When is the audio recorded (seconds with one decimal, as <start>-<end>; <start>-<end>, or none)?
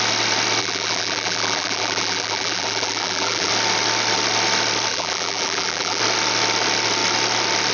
0.0-0.6; 3.5-4.9; 6.0-7.7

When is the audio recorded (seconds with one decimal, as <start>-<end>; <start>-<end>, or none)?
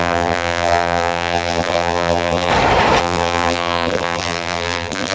2.5-3.0